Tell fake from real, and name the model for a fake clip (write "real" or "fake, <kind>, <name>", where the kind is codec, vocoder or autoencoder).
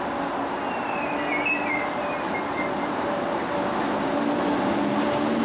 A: real